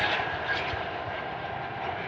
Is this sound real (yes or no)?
no